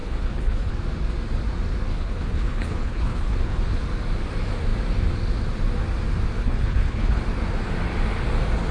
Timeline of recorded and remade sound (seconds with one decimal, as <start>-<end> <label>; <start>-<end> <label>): 0.0-0.7 remade; 0.7-1.9 recorded; 1.9-3.8 remade; 3.8-6.4 recorded; 6.4-7.2 remade; 7.2-8.7 recorded